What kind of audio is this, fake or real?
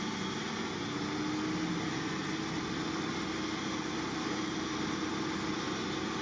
real